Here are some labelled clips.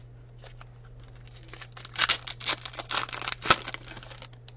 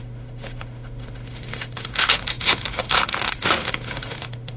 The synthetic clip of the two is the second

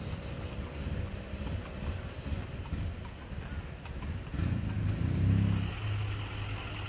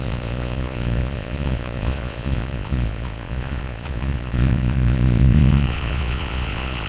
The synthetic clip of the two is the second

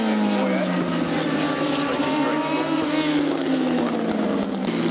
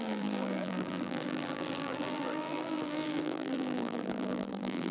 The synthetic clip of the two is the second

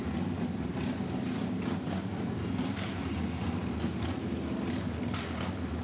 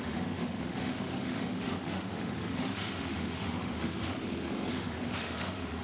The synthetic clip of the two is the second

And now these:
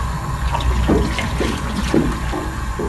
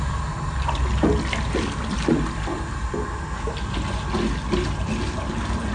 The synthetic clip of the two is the first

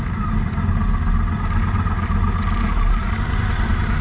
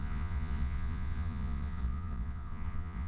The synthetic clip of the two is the second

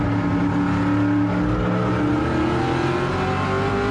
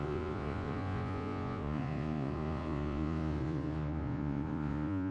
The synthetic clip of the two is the second